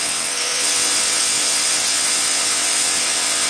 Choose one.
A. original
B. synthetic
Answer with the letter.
B